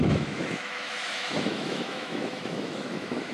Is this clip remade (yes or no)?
yes